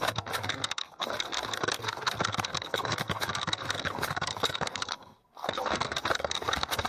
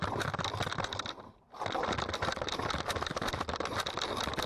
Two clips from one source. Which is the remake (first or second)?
first